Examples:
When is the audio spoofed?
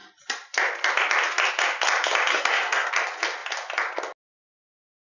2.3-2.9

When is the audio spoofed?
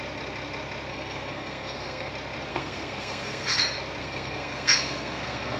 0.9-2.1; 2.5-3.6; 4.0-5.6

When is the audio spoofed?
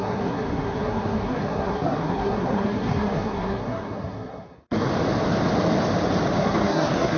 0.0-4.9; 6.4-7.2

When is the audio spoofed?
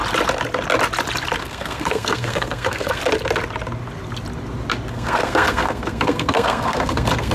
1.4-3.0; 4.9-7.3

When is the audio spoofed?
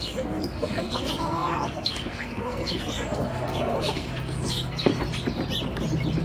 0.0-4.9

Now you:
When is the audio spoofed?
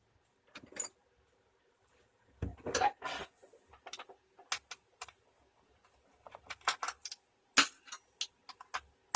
none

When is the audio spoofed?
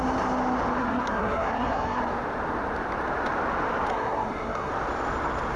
0.8-2.0; 3.9-4.7